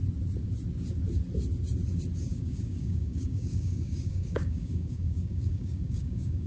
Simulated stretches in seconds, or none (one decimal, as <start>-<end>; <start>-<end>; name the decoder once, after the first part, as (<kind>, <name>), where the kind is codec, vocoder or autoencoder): 2.3-6.5 (codec, DAC)